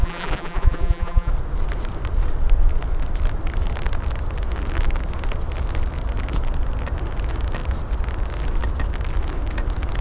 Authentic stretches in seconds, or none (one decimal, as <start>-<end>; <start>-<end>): 1.3-10.0